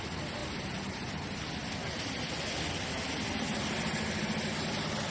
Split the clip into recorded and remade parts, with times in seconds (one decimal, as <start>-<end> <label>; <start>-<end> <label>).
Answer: 0.0-5.1 recorded

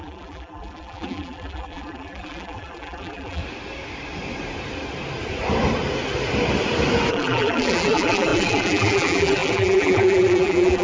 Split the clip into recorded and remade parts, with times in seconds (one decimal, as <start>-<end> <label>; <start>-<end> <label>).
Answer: 0.0-3.4 remade; 3.4-7.1 recorded; 7.1-10.8 remade

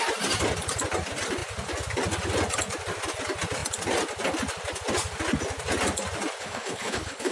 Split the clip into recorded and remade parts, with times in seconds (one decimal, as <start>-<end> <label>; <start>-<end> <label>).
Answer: 0.0-6.4 recorded; 6.4-7.3 remade